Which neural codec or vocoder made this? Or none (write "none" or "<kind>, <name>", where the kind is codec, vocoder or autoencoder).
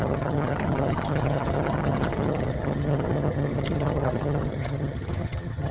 vocoder, HiFi-GAN